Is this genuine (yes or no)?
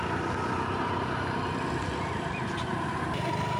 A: yes